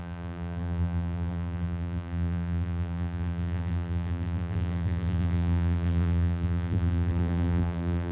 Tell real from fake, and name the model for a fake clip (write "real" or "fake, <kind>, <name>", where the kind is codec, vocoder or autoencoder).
fake, vocoder, BigVGAN v2